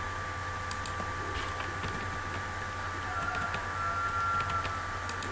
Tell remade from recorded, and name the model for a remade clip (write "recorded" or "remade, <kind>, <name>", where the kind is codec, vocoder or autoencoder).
recorded